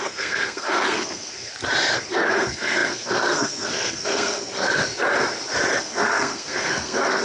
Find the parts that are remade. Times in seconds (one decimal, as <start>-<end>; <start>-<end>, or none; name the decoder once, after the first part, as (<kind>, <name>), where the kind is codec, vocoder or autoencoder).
0.0-1.5 (codec, SNAC); 2.1-4.8; 5.8-7.2

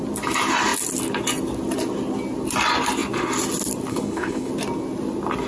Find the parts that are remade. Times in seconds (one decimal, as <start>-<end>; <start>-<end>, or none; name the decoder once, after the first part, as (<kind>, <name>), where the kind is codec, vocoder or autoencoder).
3.9-4.5 (codec, HILCodec)

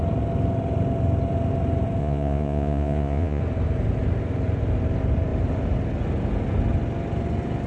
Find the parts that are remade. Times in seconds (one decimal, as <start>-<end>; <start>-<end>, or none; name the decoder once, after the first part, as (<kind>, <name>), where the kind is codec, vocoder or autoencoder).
2.0-3.4 (vocoder, Vocos)

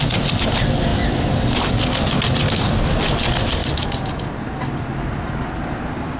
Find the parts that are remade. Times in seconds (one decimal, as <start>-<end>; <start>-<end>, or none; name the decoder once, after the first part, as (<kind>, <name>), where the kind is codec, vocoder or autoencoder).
none

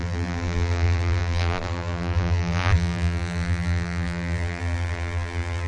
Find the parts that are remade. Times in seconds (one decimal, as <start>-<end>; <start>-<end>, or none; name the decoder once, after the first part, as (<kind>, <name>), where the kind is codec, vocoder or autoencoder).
0.0-5.7 (vocoder, BigVGAN v2)

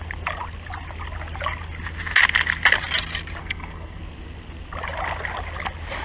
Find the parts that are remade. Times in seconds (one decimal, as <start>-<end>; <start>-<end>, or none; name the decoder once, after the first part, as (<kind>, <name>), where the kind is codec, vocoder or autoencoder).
3.4-4.0 (codec, SNAC)